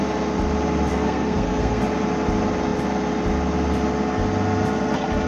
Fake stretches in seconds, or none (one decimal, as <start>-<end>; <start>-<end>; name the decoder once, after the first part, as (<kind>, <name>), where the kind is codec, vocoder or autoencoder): 0.9-1.8 (codec, SNAC)